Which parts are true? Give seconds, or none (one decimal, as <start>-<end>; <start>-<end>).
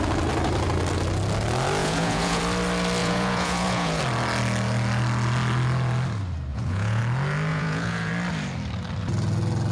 0.0-1.8; 2.4-3.0; 4.0-6.5; 7.0-7.5; 8.1-9.7